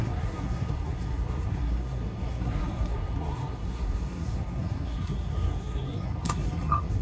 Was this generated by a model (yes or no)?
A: yes